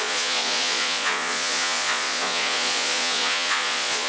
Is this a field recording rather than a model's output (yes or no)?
no